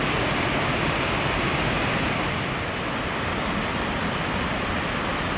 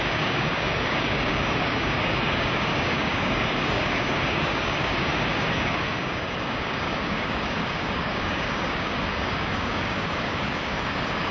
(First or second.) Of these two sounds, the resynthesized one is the second